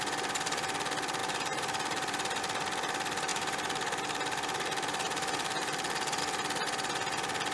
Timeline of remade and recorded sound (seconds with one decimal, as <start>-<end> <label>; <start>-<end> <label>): 0.0-1.2 recorded; 1.2-2.4 remade; 2.4-3.3 recorded; 3.3-6.2 remade; 6.2-7.5 recorded